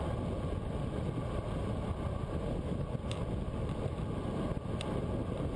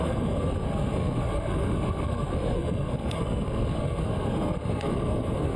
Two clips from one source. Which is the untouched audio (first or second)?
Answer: first